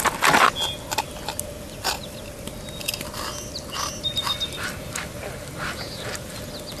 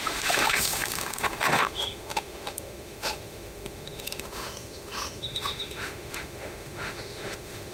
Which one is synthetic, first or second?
second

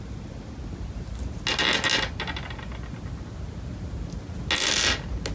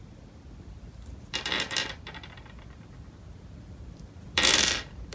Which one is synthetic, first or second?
second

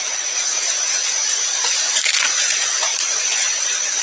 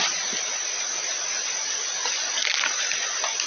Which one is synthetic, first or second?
first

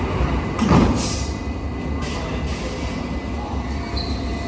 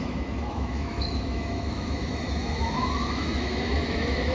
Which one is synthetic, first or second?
second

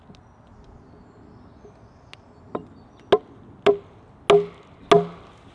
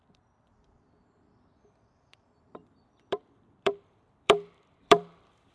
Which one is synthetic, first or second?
second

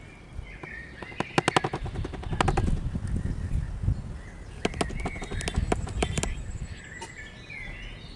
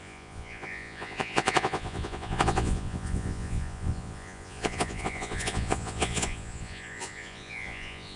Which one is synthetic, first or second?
second